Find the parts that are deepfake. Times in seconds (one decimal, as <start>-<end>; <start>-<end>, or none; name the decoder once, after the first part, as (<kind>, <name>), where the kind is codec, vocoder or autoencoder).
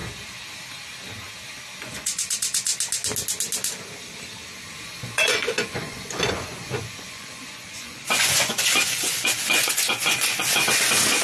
1.8-2.7 (vocoder, Vocos); 4.8-11.2